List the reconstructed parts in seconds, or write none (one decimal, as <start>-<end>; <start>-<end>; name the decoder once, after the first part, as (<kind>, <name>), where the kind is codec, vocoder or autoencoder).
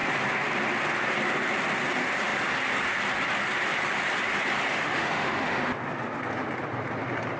4.7-5.6 (autoencoder, DAC-VAE)